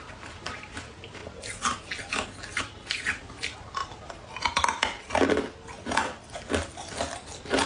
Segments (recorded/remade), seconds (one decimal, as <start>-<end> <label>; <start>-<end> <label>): 0.0-1.2 remade; 1.2-2.6 recorded; 2.6-3.8 remade; 3.8-7.7 recorded